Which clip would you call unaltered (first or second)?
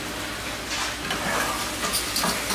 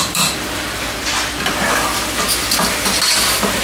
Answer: first